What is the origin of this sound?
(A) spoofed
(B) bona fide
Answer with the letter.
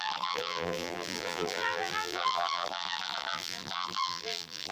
A